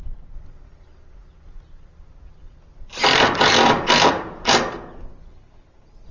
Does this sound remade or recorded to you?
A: recorded